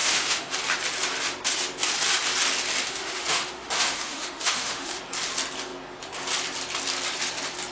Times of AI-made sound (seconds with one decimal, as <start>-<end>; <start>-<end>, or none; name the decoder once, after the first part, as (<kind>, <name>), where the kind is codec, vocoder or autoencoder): 0.0-0.5 (autoencoder, DAC-VAE); 2.8-5.0

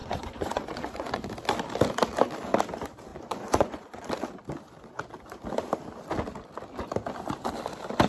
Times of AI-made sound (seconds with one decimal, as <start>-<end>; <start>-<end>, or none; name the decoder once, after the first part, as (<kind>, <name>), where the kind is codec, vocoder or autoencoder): 0.0-1.3 (vocoder, Vocos); 3.1-4.0

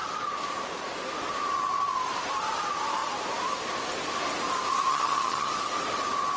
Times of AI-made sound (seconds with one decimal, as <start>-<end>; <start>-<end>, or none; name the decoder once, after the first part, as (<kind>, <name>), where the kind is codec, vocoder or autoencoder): 4.9-5.5 (vocoder, HiFi-GAN)

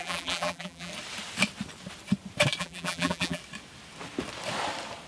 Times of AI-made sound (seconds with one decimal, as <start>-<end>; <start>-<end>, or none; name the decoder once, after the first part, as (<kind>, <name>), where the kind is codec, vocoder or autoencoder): 0.0-0.9 (vocoder, BigVGAN v2); 2.6-3.4

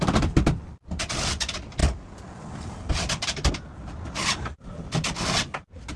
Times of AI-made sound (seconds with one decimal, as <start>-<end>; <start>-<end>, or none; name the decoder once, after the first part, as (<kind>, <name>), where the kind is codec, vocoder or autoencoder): none